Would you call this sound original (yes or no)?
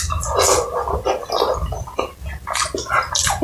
yes